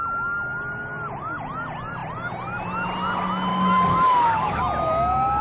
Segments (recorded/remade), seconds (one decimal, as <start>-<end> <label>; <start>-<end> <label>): 0.0-3.5 recorded; 3.5-4.6 remade; 4.6-5.4 recorded